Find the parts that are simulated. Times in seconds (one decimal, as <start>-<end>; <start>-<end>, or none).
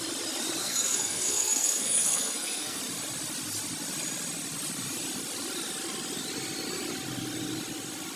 0.6-2.8